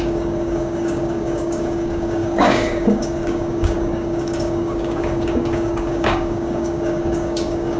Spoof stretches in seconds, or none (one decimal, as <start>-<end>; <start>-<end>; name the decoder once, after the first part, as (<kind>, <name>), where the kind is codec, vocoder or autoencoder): 0.0-7.8 (codec, DAC)